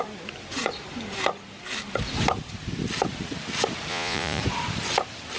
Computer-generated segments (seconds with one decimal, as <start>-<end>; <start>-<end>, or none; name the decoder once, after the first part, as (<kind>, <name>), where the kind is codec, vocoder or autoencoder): 3.9-4.4 (vocoder, Vocos)